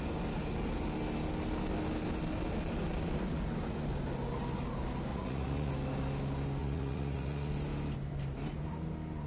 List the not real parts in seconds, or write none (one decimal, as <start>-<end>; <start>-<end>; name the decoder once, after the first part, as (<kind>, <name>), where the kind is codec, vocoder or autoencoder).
5.1-5.7 (vocoder, Vocos); 6.6-7.5